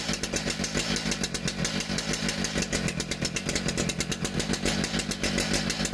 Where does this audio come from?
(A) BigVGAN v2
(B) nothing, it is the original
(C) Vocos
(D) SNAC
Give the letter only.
B